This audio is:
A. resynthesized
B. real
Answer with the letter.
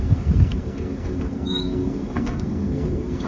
A